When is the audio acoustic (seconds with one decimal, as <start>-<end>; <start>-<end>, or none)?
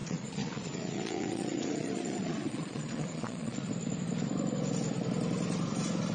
3.7-6.1